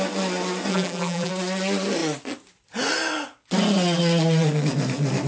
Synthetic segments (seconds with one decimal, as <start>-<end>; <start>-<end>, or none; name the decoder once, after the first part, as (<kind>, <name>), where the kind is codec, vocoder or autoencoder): 0.7-1.3 (vocoder, BigVGAN v2)